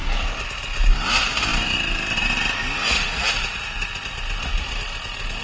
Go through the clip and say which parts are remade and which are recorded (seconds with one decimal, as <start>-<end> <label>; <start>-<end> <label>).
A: 0.0-5.4 recorded

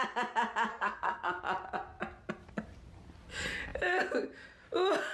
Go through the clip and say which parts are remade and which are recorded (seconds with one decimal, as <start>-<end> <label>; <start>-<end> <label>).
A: 0.0-0.7 recorded; 0.7-1.4 remade; 1.4-5.1 recorded

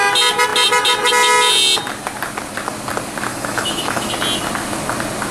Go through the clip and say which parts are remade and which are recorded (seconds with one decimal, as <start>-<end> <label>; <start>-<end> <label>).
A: 0.0-3.3 recorded; 3.3-4.1 remade; 4.1-5.3 recorded